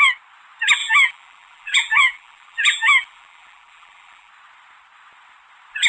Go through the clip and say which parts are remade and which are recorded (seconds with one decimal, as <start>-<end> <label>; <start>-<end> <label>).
0.0-0.8 recorded; 0.8-4.3 remade; 4.3-5.9 recorded